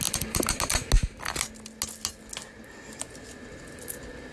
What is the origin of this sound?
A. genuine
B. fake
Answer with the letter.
A